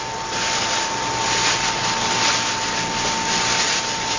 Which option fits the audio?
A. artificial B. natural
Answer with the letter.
B